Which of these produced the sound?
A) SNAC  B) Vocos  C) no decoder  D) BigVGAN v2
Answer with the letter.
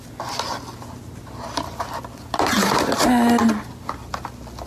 C